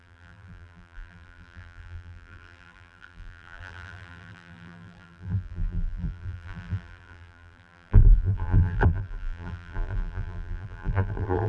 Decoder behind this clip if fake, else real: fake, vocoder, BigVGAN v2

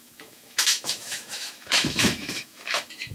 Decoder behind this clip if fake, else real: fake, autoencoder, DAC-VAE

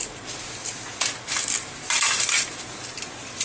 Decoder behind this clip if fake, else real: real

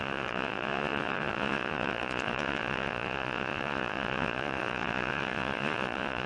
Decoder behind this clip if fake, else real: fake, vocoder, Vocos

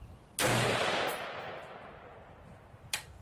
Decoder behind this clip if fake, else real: fake, vocoder, BigVGAN v2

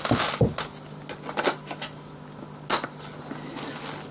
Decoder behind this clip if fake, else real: real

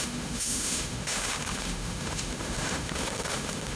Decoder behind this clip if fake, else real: fake, autoencoder, DAC-VAE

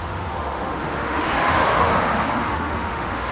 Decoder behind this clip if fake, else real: fake, autoencoder, DAC-VAE